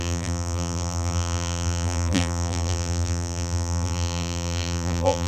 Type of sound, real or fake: fake